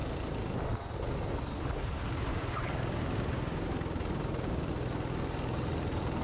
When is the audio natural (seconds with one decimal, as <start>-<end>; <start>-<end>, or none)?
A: 0.0-2.3; 4.7-6.2